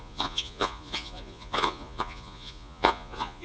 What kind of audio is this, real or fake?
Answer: fake